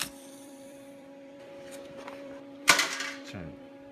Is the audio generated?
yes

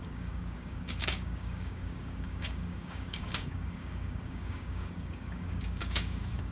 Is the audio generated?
yes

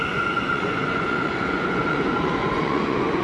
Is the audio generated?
yes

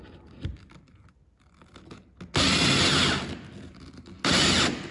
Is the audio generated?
no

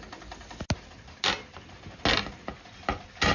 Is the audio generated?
no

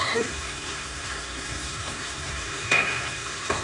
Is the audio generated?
yes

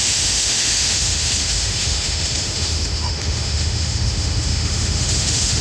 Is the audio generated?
yes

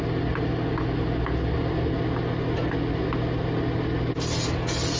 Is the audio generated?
no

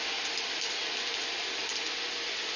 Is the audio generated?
no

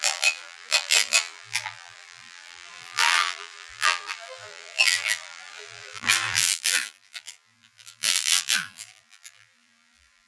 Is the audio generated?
yes